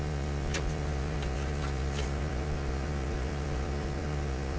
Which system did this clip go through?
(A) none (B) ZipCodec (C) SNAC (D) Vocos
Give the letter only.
D